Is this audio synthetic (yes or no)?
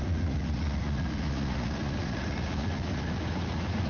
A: yes